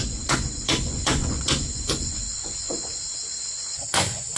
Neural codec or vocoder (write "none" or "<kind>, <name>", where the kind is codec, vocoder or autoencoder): vocoder, Vocos